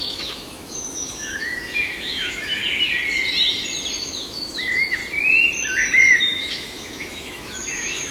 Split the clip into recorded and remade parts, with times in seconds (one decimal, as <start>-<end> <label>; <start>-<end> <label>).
0.0-2.6 remade; 2.6-4.0 recorded; 4.0-5.0 remade; 5.0-6.2 recorded; 6.2-8.1 remade